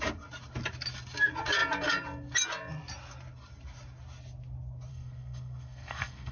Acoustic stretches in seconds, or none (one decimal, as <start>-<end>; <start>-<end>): 0.0-4.9

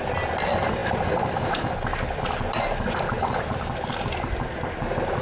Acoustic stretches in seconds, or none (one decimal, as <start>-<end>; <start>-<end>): 0.0-5.2

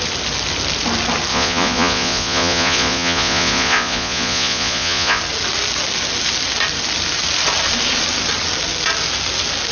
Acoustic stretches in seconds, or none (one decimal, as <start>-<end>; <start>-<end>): 0.0-1.3; 5.2-9.7

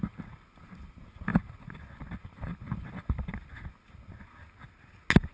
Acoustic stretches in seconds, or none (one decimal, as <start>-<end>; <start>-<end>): 0.0-5.3

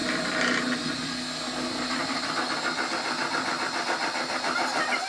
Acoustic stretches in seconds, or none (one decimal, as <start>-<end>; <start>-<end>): 0.0-5.1

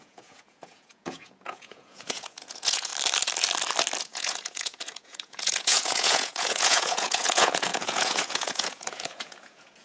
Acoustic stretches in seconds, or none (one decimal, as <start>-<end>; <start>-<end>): 2.9-4.0